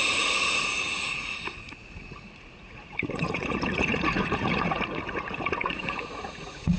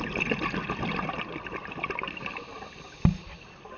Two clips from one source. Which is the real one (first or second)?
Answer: second